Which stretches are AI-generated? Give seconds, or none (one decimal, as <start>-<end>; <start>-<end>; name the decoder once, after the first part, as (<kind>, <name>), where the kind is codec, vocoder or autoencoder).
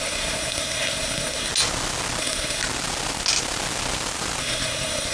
0.0-1.5 (codec, SNAC); 2.2-2.6; 4.4-5.1